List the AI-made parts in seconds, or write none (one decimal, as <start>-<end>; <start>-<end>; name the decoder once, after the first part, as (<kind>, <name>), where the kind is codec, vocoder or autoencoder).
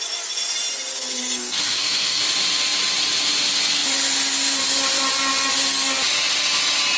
0.9-2.2 (codec, SNAC)